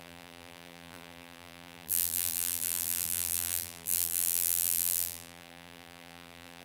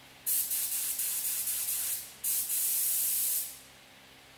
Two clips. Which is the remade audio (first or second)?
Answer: first